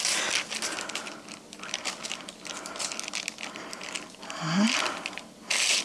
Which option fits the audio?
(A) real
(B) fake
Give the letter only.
A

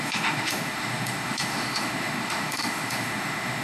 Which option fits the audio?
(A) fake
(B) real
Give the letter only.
A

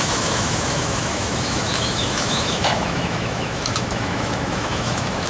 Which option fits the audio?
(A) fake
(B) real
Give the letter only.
A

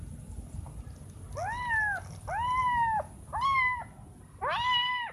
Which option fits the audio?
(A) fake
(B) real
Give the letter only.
B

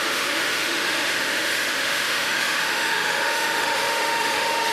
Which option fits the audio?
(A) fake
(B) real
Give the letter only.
A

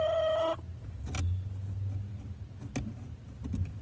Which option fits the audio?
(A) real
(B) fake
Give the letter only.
A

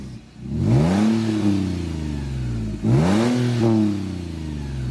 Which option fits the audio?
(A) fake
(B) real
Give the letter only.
B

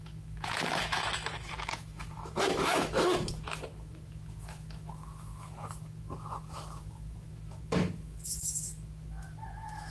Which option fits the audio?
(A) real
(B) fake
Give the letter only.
B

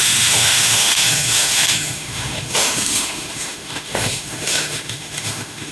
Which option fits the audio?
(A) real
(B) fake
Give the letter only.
B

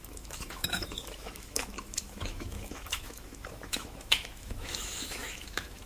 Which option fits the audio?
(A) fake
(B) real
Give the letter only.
A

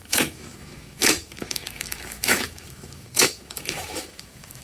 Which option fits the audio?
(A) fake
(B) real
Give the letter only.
A